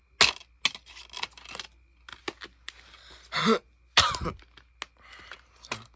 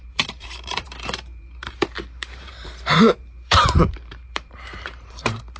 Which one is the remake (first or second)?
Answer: second